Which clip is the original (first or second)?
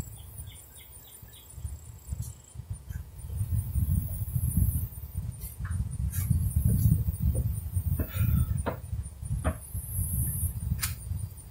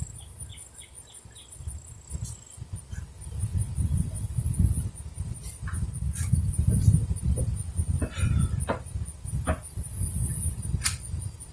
second